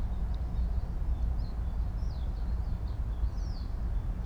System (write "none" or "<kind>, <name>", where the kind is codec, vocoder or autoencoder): none